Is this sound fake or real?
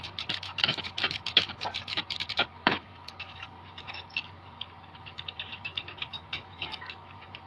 fake